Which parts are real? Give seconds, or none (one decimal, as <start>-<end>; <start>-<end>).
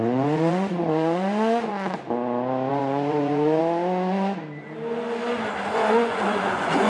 1.7-2.7; 3.6-5.7